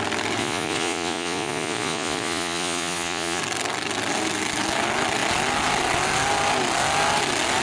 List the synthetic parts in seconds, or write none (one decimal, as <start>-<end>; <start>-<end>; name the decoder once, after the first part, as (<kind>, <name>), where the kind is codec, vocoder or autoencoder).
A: 0.4-3.4 (vocoder, Vocos)